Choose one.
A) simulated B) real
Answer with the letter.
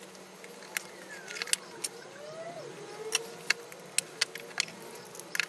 B